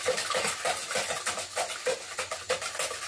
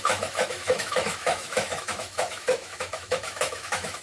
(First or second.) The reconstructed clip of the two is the second